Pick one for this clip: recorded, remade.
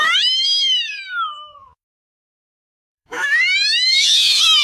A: remade